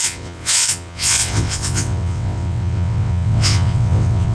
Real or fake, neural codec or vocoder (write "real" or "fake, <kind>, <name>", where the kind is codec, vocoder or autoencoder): fake, vocoder, WaveNeXt